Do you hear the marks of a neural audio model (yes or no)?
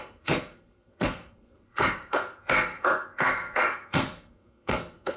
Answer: yes